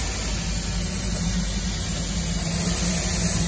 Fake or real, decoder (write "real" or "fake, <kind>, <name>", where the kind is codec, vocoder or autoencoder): real